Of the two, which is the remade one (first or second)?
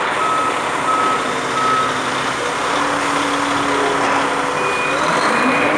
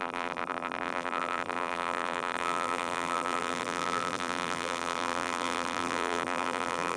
second